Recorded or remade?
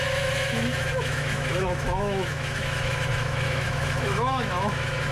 remade